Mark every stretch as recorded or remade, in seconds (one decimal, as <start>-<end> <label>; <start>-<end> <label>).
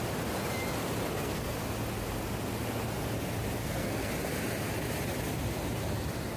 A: 0.0-1.1 recorded; 1.1-1.6 remade; 1.6-3.6 recorded; 3.6-4.1 remade; 4.1-6.4 recorded